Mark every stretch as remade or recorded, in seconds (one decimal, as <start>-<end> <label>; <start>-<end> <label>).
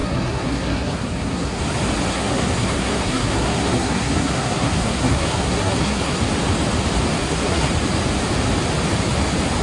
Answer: 0.0-1.6 remade; 1.6-2.1 recorded; 2.1-6.2 remade; 6.2-7.2 recorded; 7.2-7.7 remade; 7.7-9.6 recorded